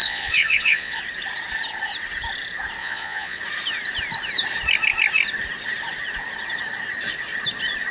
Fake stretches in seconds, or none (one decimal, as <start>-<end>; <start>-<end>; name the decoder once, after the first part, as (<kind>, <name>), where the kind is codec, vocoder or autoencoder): 0.0-1.0 (vocoder, Vocos); 2.8-3.4